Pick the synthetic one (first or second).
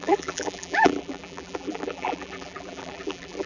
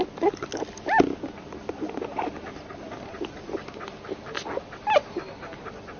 first